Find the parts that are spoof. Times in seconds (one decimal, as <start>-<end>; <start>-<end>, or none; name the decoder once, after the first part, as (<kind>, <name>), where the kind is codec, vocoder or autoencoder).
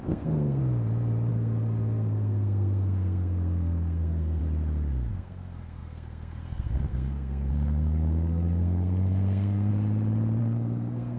0.0-0.6 (codec, SNAC); 1.3-4.4; 5.1-9.7; 10.4-11.2